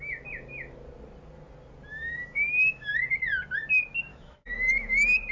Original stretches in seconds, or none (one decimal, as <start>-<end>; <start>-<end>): 0.0-1.9; 2.9-4.1